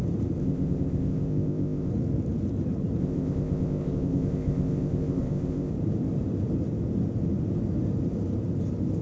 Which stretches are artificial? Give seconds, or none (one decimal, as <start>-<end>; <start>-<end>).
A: 0.4-1.9; 3.0-5.7